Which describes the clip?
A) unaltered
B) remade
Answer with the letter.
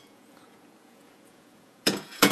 B